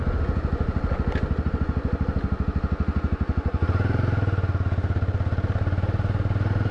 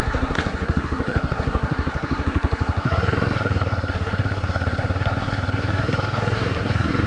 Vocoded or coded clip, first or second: second